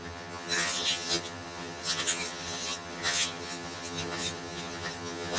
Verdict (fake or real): fake